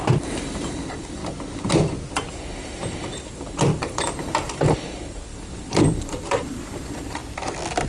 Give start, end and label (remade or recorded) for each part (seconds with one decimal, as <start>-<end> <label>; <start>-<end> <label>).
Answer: 0.0-1.2 remade; 1.2-2.3 recorded; 2.3-7.2 remade; 7.2-7.9 recorded